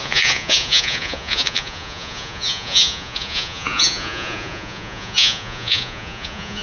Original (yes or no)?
no